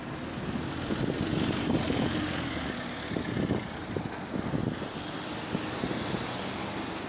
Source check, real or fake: real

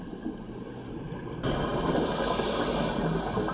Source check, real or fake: real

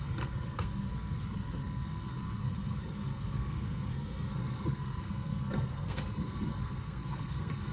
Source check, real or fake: fake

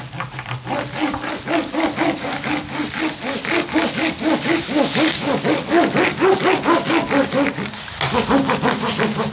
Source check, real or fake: real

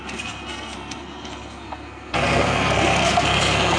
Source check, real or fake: fake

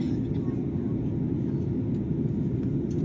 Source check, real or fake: real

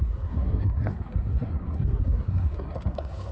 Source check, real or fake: fake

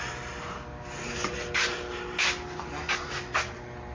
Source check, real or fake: real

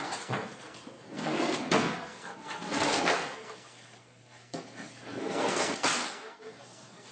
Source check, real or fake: fake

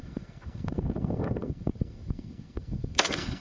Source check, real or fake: fake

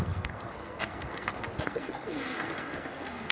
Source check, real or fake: fake